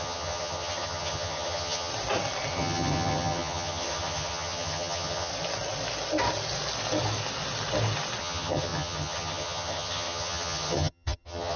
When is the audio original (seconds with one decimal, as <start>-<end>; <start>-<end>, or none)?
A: 1.9-2.5; 5.3-8.2